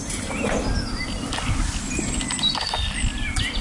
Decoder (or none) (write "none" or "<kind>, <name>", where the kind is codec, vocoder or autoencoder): none